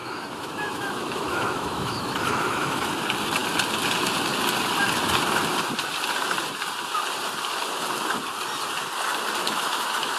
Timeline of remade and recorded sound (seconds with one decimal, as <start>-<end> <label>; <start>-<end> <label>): 0.0-2.9 remade; 2.9-9.4 recorded; 9.4-10.2 remade